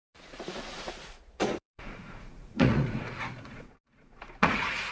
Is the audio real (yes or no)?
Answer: no